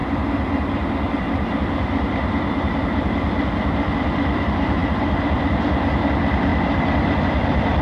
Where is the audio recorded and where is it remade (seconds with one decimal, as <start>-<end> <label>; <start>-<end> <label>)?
0.0-1.1 recorded; 1.1-7.8 remade